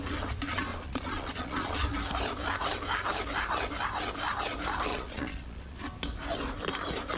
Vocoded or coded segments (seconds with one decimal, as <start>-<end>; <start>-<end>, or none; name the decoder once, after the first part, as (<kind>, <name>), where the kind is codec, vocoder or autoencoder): 0.7-1.8 (vocoder, Vocos); 4.9-5.8